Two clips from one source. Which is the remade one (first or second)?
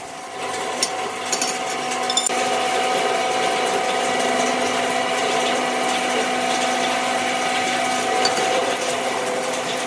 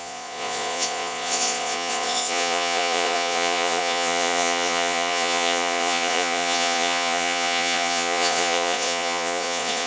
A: second